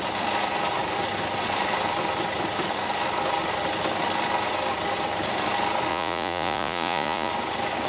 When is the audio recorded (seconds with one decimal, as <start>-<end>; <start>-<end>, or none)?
0.0-5.9; 7.3-7.9